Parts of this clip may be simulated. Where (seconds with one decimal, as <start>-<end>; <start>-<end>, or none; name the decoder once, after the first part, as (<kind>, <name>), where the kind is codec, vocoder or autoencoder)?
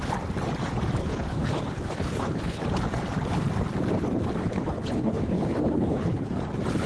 1.0-2.6 (codec, HILCodec); 4.4-6.4